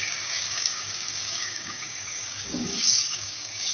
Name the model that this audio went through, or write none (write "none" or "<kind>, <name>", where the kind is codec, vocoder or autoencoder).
codec, DAC